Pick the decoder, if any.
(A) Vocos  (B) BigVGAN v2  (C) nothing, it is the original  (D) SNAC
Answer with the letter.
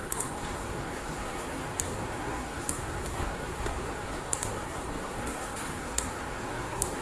D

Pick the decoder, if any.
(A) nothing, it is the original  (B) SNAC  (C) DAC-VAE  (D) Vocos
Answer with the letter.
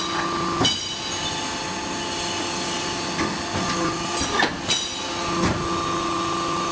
A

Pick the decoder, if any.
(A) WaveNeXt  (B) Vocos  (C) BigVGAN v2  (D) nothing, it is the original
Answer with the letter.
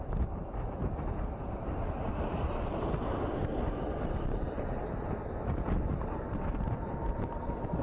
C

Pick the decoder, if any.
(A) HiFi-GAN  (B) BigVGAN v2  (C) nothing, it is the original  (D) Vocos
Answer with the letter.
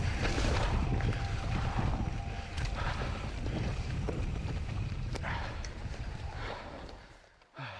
B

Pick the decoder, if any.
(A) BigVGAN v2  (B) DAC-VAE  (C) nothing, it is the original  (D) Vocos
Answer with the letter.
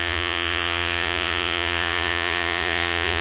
D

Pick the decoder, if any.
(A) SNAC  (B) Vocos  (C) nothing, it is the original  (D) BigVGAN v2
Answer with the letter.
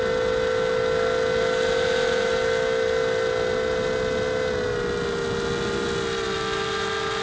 C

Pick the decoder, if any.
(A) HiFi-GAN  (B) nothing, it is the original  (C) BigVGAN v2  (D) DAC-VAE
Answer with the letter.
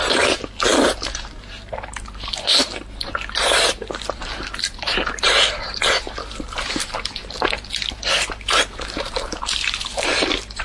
C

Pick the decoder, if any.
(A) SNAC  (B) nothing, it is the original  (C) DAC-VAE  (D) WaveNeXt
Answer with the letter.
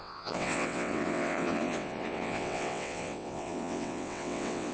D